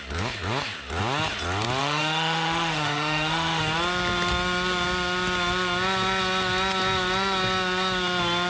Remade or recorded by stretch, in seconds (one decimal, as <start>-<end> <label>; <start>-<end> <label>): 0.0-1.8 recorded; 1.8-3.6 remade; 3.6-8.5 recorded